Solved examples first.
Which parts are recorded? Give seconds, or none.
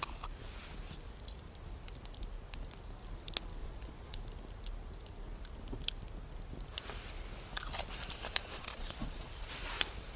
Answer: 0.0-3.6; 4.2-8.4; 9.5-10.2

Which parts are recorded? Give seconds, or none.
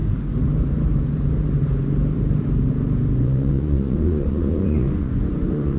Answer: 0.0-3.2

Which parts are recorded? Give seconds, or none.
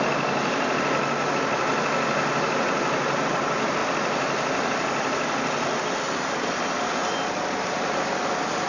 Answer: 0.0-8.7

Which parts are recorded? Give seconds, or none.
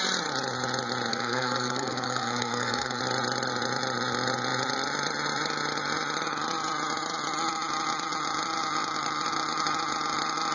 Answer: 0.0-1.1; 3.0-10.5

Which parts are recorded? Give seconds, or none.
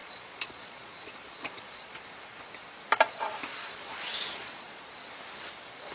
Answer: 2.0-3.5; 4.9-5.9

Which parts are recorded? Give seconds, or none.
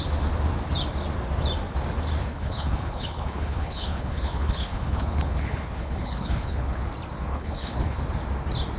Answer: 0.0-2.2; 6.8-7.3; 8.0-8.8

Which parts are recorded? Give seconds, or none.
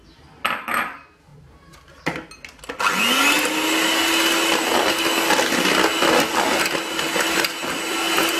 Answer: 0.0-8.4